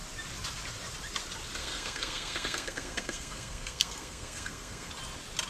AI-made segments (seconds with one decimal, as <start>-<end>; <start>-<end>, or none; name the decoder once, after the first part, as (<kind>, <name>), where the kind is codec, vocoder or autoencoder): 1.6-4.9 (codec, SNAC)